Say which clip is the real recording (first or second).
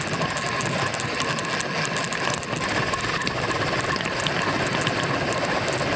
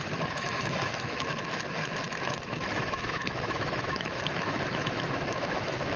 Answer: first